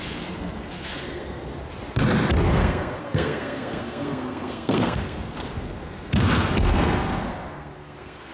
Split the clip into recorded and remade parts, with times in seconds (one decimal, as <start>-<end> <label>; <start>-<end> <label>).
0.0-1.5 remade; 1.5-2.3 recorded; 2.3-8.3 remade